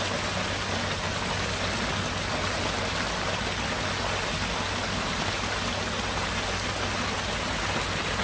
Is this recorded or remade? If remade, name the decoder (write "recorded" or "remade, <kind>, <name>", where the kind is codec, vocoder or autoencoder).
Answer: recorded